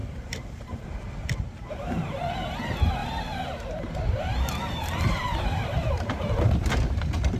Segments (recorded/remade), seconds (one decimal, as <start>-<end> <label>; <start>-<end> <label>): 0.0-2.3 remade; 2.3-3.0 recorded; 3.0-6.5 remade; 6.5-7.4 recorded